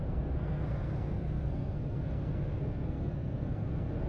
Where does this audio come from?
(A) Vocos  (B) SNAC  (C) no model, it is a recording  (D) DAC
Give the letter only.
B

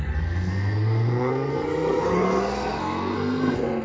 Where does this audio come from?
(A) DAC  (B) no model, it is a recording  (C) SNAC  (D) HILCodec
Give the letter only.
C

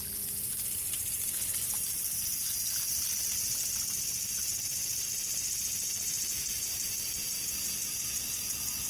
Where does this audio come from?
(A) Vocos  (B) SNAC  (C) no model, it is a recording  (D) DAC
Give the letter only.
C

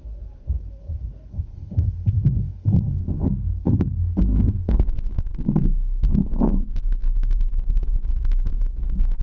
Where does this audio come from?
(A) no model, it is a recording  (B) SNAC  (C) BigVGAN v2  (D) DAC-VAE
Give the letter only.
B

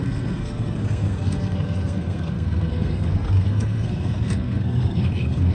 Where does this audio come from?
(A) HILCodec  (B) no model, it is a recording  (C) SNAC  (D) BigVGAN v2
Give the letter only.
C